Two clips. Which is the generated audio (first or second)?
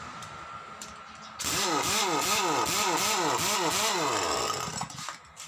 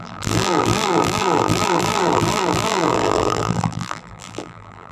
second